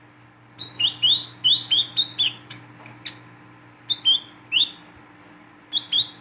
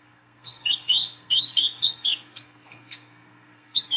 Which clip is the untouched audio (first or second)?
first